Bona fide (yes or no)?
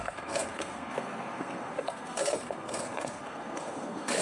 no